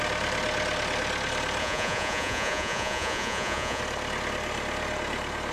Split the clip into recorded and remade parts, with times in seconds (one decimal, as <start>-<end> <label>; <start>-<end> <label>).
0.0-1.6 recorded; 1.6-3.8 remade; 3.8-5.5 recorded